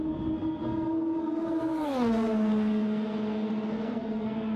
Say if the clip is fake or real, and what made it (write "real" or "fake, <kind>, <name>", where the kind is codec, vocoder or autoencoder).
fake, codec, SNAC